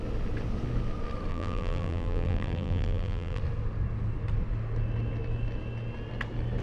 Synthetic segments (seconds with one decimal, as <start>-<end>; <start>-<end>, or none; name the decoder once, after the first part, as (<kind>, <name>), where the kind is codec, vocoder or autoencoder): 1.3-3.4 (vocoder, BigVGAN v2)